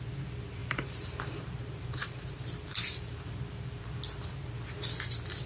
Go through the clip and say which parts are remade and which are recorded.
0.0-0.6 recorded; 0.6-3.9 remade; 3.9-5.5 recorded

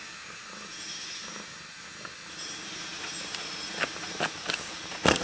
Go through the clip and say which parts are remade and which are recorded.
0.0-5.2 recorded

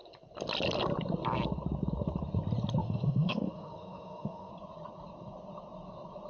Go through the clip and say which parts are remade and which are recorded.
0.0-2.8 recorded; 2.8-4.5 remade; 4.5-6.3 recorded

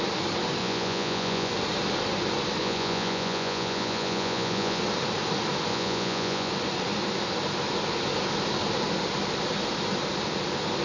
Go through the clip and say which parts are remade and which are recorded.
0.0-0.6 recorded; 0.6-1.5 remade; 1.5-2.6 recorded; 2.6-4.8 remade; 4.8-5.7 recorded; 5.7-6.5 remade; 6.5-10.8 recorded

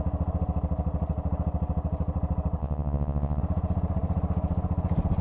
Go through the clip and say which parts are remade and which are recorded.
0.0-2.6 recorded; 2.6-3.4 remade; 3.4-5.2 recorded